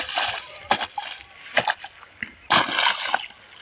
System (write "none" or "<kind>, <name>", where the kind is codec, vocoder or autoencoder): none